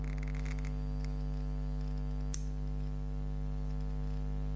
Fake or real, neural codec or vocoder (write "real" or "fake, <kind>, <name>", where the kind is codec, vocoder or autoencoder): real